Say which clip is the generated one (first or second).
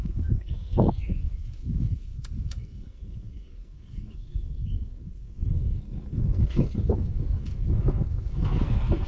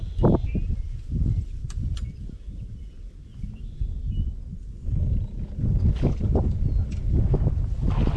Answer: first